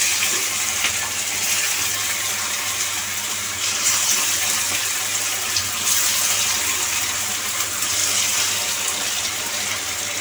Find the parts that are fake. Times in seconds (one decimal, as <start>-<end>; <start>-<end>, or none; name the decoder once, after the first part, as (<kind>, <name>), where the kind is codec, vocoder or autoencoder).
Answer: 0.0-10.2 (vocoder, BigVGAN v2)